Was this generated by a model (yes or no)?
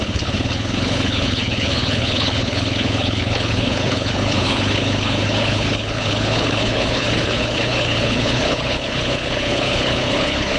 yes